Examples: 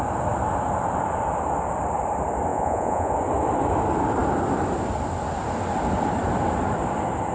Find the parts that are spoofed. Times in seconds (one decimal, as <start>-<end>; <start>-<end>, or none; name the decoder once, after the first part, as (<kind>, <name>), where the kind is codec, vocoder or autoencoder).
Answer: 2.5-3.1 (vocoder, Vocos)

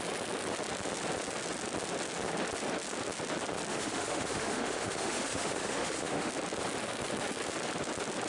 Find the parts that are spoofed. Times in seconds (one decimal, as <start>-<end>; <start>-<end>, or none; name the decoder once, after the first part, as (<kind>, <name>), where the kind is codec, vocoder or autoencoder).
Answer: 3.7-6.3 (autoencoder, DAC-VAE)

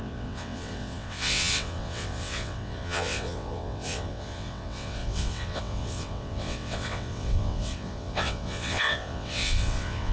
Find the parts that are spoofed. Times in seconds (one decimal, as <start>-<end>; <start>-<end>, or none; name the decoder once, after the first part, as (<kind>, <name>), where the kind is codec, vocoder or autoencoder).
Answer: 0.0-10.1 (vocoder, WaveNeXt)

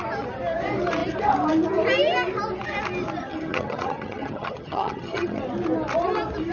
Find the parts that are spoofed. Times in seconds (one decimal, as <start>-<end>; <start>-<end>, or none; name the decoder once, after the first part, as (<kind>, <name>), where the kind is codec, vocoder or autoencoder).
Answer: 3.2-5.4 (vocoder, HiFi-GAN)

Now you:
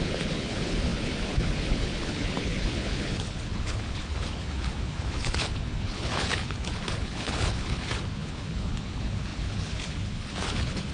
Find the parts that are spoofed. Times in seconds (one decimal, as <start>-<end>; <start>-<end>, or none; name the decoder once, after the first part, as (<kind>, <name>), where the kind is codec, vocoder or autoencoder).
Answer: 0.0-10.9 (codec, HILCodec)